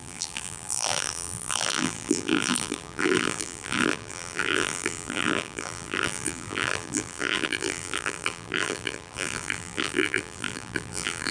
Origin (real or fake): fake